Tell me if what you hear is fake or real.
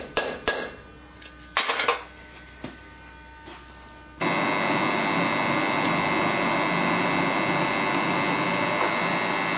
real